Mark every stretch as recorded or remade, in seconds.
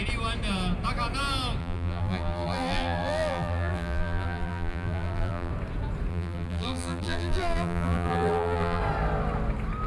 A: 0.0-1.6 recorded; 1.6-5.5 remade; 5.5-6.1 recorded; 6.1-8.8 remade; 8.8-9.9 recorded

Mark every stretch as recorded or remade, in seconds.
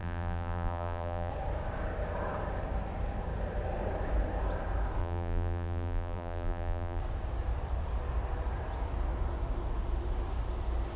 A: 0.0-1.3 remade; 1.3-5.0 recorded; 5.0-7.0 remade; 7.0-11.0 recorded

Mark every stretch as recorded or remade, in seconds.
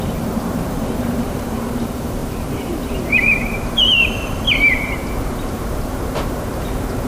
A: 0.0-7.1 remade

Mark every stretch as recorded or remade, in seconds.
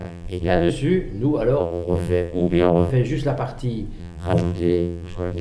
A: 0.0-0.7 remade; 0.7-1.6 recorded; 1.6-2.9 remade; 2.9-4.0 recorded; 4.0-5.4 remade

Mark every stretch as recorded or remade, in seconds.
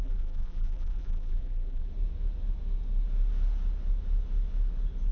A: 0.0-1.9 remade; 1.9-5.1 recorded